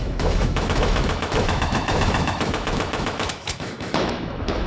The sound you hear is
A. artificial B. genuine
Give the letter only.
A